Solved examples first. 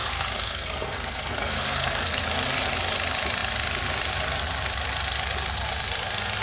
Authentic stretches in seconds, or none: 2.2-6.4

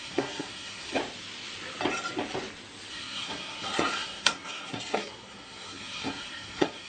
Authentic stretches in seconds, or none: 1.0-2.9

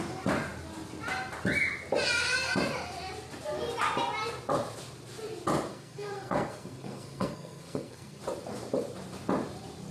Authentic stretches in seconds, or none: 0.0-5.7; 8.2-9.9

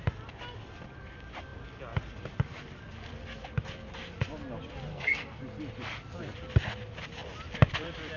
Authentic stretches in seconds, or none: 0.0-4.9; 5.4-8.2

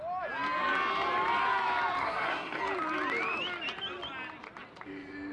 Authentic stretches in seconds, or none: 0.0-2.0; 2.6-5.3